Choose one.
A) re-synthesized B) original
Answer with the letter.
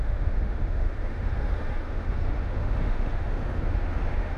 A